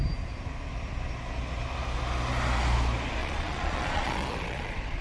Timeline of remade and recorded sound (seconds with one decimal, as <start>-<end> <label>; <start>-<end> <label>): 0.0-3.2 recorded; 3.2-5.0 remade